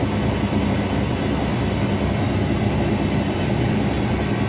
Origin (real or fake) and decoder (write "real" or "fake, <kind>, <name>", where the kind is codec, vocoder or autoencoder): real